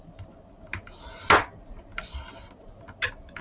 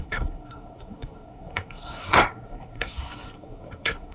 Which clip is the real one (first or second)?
first